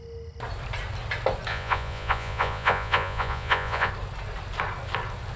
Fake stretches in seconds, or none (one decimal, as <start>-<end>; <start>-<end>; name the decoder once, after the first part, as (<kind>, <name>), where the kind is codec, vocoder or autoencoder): 1.5-3.9 (vocoder, Vocos)